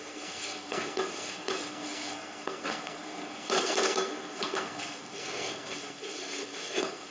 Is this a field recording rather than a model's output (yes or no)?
no